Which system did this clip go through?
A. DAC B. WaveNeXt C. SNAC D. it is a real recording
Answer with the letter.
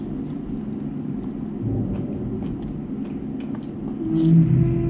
D